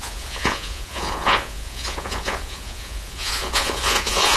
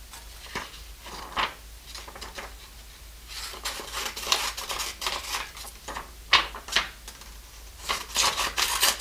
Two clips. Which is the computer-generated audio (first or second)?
first